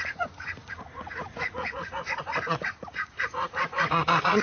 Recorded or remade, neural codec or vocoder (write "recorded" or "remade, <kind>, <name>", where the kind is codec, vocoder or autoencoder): remade, vocoder, Vocos